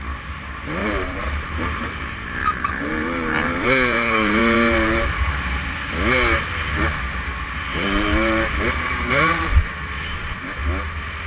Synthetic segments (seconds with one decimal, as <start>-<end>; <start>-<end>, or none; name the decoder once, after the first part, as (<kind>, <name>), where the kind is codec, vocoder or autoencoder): 0.8-5.2 (vocoder, BigVGAN v2); 7.7-9.7